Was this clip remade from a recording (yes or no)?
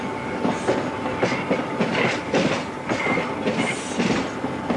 no